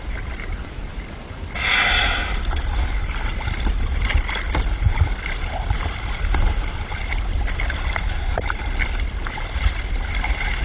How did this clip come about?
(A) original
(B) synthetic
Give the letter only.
A